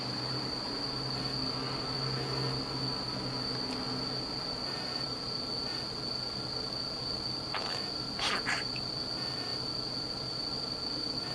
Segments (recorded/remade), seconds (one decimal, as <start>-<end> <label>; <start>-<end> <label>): 0.0-11.3 recorded